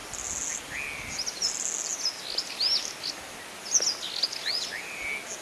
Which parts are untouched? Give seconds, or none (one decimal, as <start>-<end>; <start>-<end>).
0.0-5.4